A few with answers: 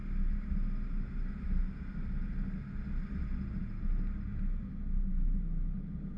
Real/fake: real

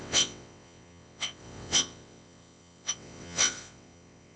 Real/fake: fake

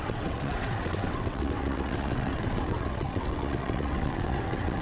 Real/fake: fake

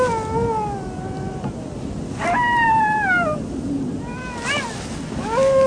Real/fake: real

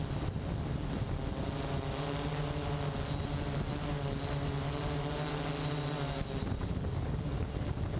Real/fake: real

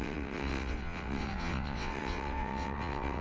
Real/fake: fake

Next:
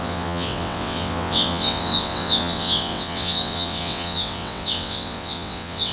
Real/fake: fake